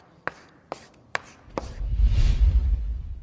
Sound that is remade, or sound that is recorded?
remade